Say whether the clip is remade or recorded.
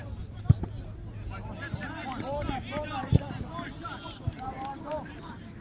remade